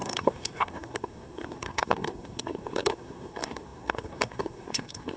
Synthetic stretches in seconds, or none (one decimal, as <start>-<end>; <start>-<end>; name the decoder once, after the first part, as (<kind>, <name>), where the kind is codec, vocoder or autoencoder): 0.0-5.2 (codec, SNAC)